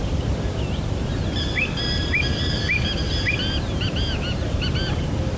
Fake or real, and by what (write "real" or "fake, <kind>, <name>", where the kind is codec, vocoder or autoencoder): real